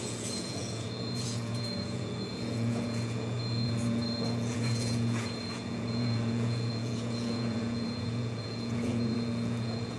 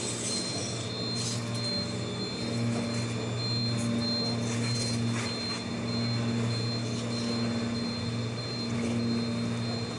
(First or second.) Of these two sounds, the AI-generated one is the first